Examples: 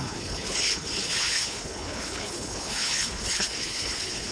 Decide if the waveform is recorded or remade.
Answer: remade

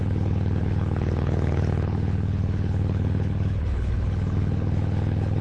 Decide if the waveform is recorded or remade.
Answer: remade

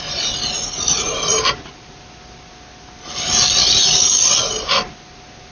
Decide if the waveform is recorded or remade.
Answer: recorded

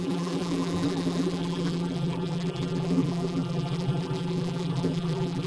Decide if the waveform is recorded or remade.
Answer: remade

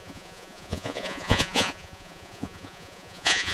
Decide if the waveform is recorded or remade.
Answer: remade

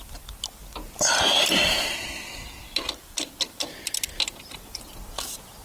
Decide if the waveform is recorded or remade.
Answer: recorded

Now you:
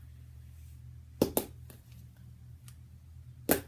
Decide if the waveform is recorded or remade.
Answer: recorded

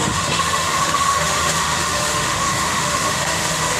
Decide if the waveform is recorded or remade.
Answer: remade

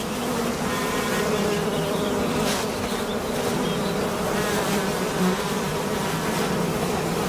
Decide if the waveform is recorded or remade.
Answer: remade